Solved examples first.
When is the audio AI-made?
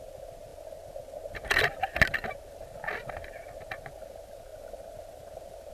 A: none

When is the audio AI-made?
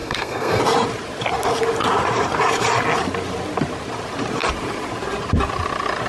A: 0.0-0.6 (codec, SNAC)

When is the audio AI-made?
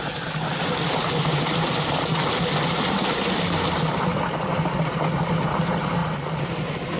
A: none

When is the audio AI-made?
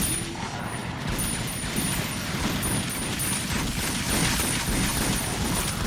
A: none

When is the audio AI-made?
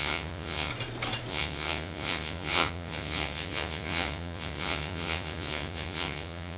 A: 0.0-0.7 (vocoder, Vocos); 1.3-6.6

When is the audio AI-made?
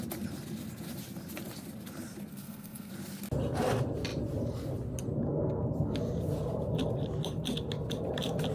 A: 2.3-2.9 (codec, SNAC)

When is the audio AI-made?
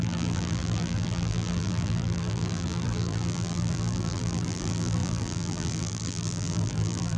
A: 0.0-7.2 (vocoder, BigVGAN v2)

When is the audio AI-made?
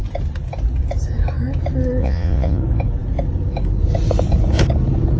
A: 2.0-2.6 (vocoder, Vocos)